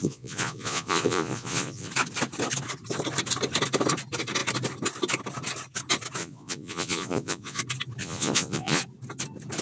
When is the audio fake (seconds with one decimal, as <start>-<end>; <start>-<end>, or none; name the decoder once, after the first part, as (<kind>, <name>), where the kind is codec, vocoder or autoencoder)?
0.0-1.9 (vocoder, Vocos); 6.2-7.6; 8.0-8.8